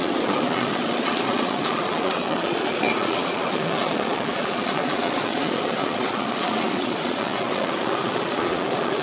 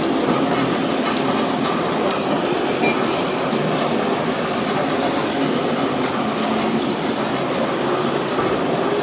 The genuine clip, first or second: second